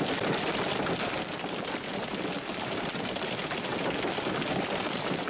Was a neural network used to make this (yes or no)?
no